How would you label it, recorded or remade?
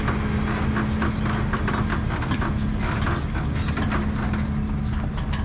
recorded